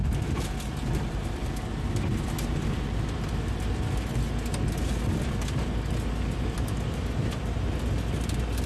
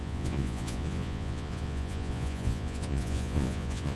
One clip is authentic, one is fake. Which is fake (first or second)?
second